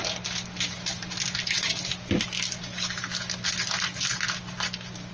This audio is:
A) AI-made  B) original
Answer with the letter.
B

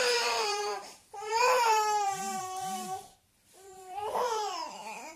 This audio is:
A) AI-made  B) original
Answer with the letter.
A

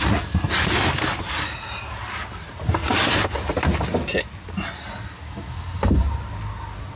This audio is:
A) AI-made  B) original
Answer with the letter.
B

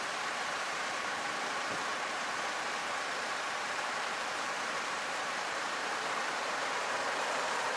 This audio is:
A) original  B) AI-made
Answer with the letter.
B